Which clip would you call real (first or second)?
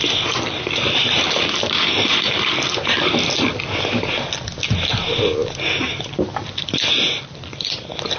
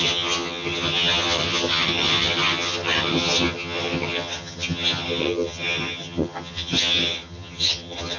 first